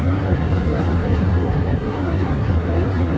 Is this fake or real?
fake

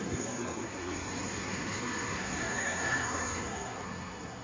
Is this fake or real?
fake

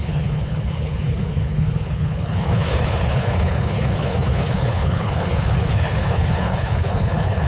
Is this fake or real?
fake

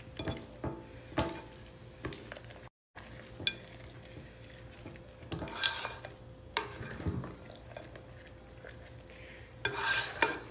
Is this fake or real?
real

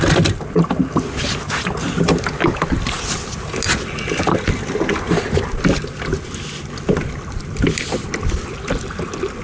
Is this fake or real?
real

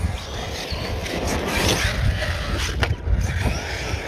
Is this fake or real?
real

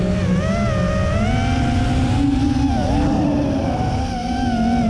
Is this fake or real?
real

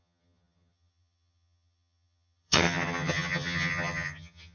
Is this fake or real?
fake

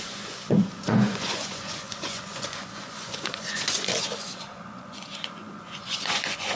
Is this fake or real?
fake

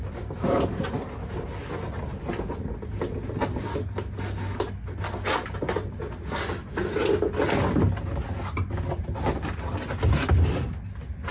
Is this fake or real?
real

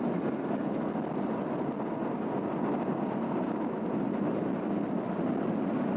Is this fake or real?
real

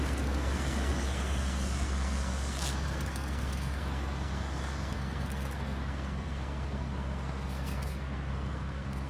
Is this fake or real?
fake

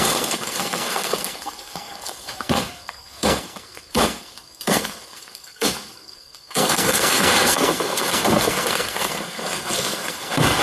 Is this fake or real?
fake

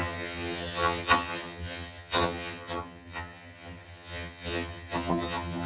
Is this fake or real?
fake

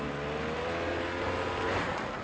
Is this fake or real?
real